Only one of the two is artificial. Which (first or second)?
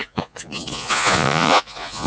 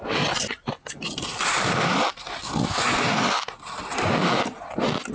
first